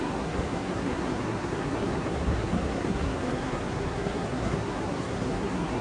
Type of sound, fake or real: fake